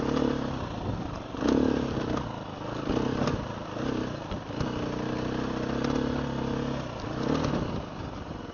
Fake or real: real